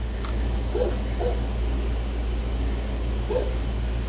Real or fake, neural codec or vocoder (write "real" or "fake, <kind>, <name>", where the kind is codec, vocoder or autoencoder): real